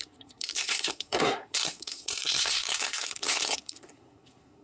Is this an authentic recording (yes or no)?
no